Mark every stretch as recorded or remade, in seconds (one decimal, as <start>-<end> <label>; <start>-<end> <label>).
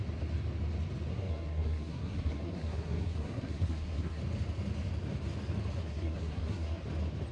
0.0-1.1 recorded; 1.1-4.2 remade; 4.2-5.8 recorded; 5.8-6.8 remade; 6.8-7.3 recorded